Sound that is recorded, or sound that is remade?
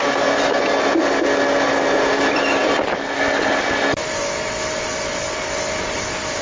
recorded